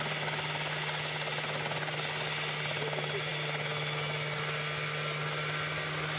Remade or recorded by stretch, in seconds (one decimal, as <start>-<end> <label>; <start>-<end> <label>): 0.0-6.2 recorded